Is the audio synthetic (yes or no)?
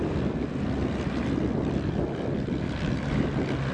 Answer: no